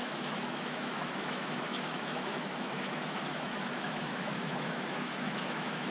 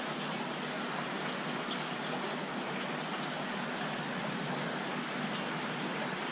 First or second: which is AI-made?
first